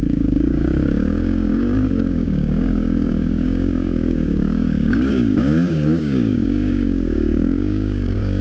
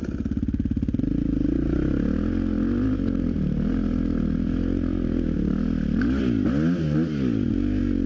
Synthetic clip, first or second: first